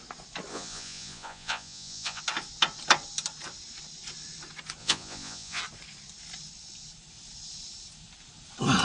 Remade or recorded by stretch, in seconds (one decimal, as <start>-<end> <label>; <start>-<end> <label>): 0.0-0.5 recorded; 0.5-2.2 remade; 2.2-4.8 recorded; 4.8-5.6 remade; 5.6-8.8 recorded

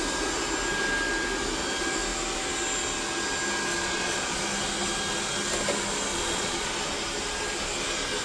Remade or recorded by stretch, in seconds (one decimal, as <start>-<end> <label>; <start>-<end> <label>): 0.0-3.7 recorded; 3.7-4.4 remade; 4.4-6.1 recorded; 6.1-6.7 remade; 6.7-8.2 recorded